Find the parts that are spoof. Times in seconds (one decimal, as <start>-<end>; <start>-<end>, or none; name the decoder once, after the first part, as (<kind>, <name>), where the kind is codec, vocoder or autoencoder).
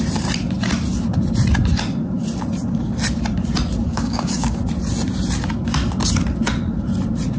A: 3.9-4.6 (codec, DAC)